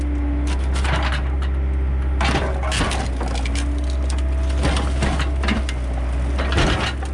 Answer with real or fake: real